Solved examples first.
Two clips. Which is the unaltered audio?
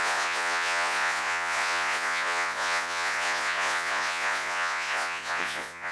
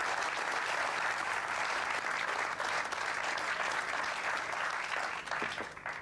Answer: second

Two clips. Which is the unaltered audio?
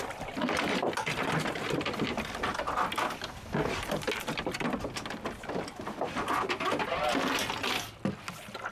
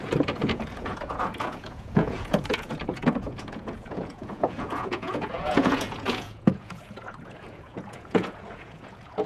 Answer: first